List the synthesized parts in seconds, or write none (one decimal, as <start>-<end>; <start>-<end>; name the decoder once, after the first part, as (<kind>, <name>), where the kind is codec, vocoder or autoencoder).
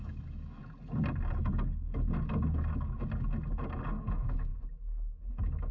0.0-0.6 (autoencoder, DAC-VAE); 4.0-4.5; 5.3-5.7